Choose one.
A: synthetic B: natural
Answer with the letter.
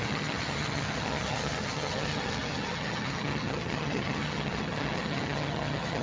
A